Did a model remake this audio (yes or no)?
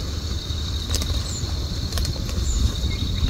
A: no